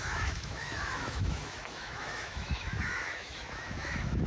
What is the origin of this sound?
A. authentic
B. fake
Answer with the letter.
B